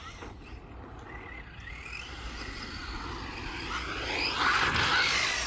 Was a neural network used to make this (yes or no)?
no